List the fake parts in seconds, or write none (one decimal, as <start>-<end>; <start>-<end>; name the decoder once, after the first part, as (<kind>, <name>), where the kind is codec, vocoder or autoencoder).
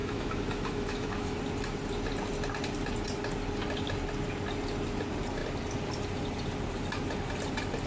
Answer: 0.0-1.4 (autoencoder, DAC-VAE)